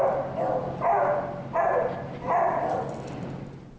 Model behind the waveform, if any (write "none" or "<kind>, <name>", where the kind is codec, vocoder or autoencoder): none